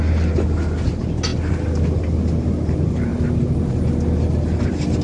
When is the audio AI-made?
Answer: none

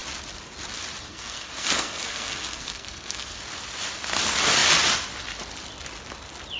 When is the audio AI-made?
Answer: 1.1-3.4 (codec, SNAC)

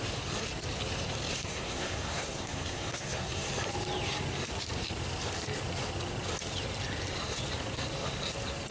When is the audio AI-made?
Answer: 1.3-3.5 (codec, SNAC)

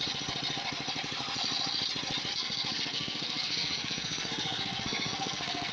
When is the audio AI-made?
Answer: 2.3-5.7 (codec, SNAC)

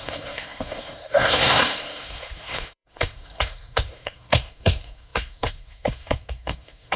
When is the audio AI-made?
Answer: 0.0-7.0 (codec, SNAC)